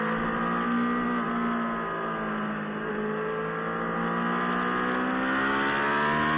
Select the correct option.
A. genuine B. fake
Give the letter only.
A